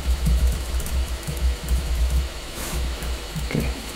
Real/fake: fake